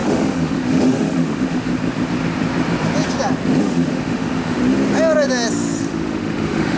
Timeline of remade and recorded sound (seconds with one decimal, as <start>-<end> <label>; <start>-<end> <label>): 0.0-1.7 remade; 1.7-3.6 recorded; 3.6-4.6 remade; 4.6-5.8 recorded; 5.8-6.8 remade